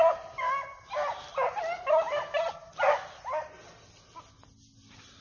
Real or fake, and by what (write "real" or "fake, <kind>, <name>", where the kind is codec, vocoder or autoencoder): real